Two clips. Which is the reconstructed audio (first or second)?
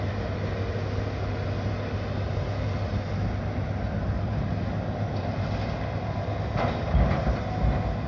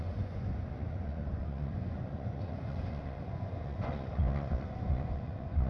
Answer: second